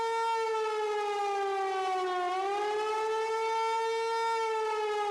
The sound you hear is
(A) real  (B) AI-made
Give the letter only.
A